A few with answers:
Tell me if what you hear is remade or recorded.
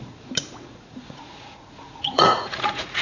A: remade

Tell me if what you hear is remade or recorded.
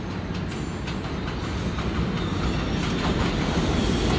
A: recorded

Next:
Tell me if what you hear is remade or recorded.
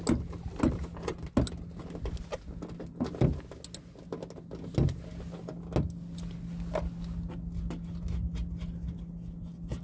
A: recorded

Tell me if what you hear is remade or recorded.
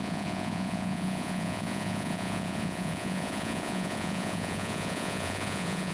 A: remade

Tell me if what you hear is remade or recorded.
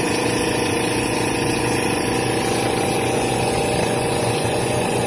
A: remade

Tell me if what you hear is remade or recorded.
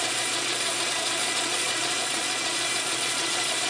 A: remade